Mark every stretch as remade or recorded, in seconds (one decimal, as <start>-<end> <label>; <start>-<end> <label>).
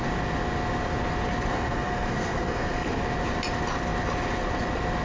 0.0-1.5 recorded; 1.5-3.0 remade; 3.0-5.0 recorded